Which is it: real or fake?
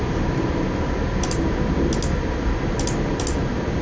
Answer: real